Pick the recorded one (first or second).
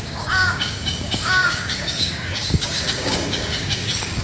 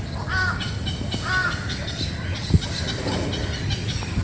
second